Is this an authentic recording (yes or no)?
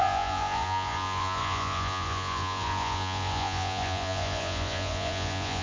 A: no